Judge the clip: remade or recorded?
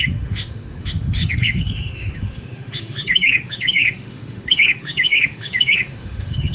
remade